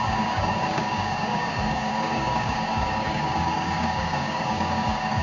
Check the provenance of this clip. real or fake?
fake